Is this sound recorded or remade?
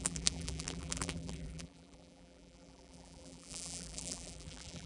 remade